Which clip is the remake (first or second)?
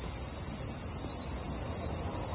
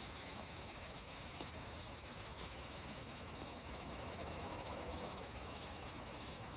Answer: second